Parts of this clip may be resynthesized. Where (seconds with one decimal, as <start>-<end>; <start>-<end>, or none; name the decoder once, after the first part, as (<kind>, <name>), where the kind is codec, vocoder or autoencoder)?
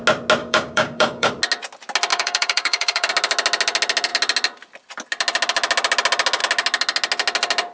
0.4-1.3 (codec, DAC); 2.1-3.1